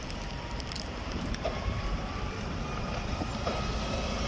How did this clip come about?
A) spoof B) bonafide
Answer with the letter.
A